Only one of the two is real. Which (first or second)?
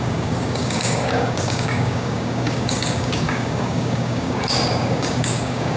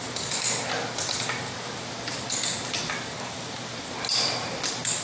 second